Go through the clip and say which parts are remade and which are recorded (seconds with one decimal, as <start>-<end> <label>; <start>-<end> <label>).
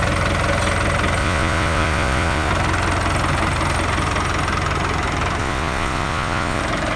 0.0-1.2 recorded; 1.2-2.5 remade; 2.5-5.4 recorded; 5.4-6.6 remade; 6.6-7.0 recorded